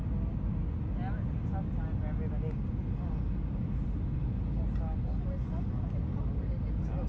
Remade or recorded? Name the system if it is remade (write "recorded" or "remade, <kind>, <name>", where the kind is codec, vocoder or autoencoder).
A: recorded